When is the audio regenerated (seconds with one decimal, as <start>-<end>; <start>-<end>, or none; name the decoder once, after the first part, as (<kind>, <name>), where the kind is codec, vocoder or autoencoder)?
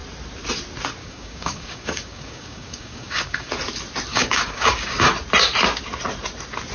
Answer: 1.0-3.5 (codec, DAC); 4.1-5.1